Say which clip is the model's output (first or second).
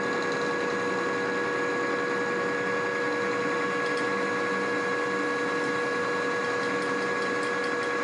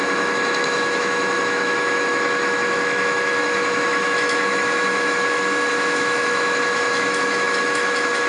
second